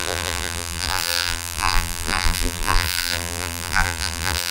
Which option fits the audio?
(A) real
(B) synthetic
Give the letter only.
B